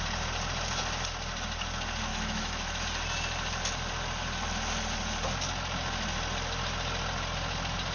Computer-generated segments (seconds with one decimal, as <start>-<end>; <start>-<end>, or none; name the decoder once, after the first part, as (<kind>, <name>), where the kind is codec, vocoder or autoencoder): 2.1-2.8 (autoencoder, DAC-VAE)